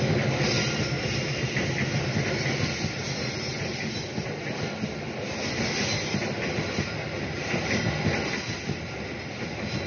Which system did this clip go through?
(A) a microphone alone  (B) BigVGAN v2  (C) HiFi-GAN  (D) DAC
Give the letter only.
A